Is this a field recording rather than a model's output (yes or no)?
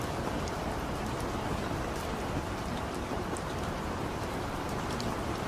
yes